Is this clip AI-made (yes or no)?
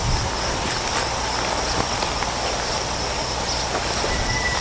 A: no